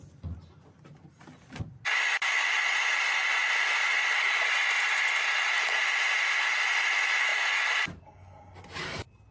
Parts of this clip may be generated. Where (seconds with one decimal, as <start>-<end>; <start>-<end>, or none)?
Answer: none